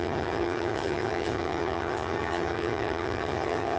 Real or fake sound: fake